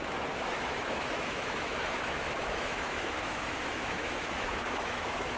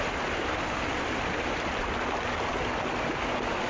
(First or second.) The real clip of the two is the second